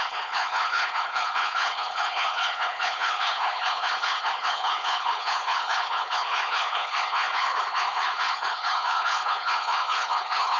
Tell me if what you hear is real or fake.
fake